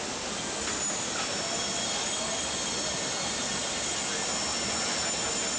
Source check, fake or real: real